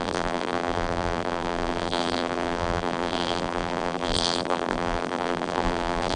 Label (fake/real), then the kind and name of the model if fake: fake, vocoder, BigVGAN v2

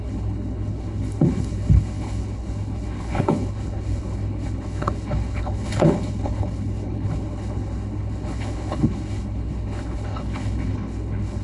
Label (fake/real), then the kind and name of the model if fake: fake, codec, HILCodec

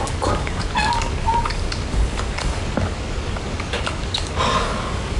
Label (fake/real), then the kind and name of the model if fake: fake, codec, DAC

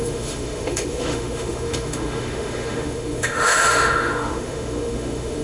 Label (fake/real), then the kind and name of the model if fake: fake, autoencoder, DAC-VAE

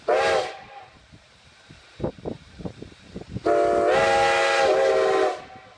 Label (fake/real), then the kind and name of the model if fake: real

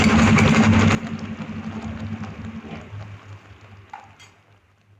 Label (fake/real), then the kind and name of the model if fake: real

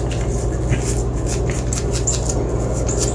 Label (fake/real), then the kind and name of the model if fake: real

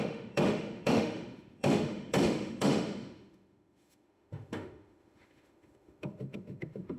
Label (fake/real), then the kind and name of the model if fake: fake, autoencoder, DAC-VAE